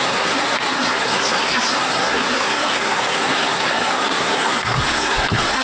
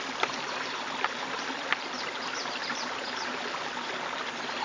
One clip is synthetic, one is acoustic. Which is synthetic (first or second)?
first